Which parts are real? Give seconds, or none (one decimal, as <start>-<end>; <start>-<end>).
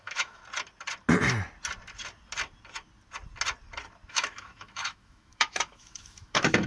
0.4-4.1